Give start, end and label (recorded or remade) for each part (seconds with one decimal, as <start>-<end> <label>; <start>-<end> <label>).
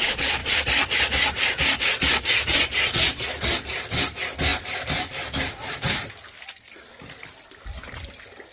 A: 0.0-8.5 recorded